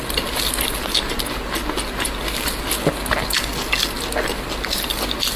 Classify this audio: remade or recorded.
recorded